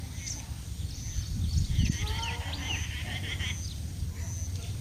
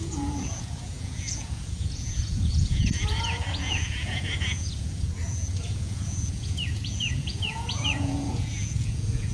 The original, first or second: first